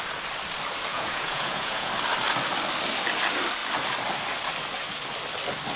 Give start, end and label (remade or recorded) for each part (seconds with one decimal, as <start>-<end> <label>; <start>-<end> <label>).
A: 0.0-0.9 recorded; 0.9-1.9 remade; 1.9-5.8 recorded